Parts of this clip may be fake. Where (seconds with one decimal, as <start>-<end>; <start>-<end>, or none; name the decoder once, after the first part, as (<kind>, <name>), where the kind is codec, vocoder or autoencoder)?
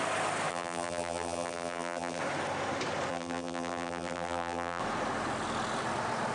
0.5-2.2 (vocoder, BigVGAN v2); 3.1-4.8